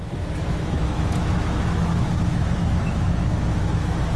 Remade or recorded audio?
remade